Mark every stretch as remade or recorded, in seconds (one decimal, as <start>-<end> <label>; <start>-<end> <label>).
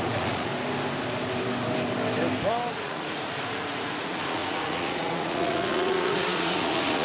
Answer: 0.0-0.5 remade; 0.5-2.7 recorded; 2.7-7.0 remade